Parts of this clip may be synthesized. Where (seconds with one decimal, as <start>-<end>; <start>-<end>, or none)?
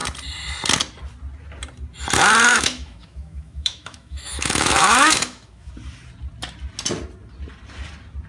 2.5-5.7